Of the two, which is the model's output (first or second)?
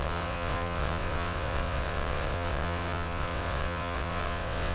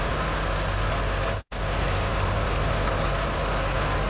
first